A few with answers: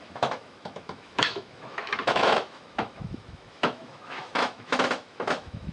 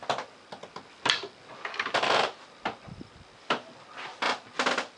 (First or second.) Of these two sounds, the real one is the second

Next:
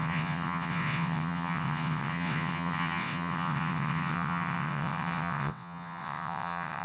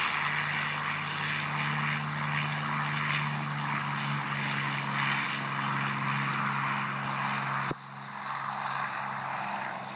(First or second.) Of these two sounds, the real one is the second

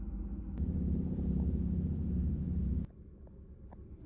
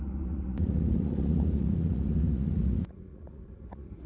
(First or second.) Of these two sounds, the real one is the first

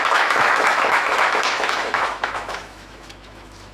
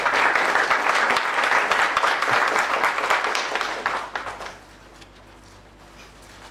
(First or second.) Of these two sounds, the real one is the second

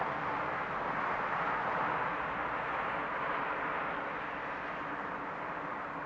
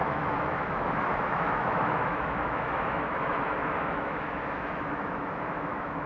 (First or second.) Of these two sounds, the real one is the first